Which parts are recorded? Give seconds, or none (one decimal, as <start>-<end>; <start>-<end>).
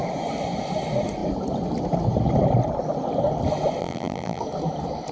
0.0-3.8; 4.4-5.1